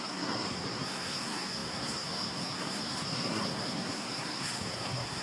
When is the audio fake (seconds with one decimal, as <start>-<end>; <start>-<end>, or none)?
0.0-5.2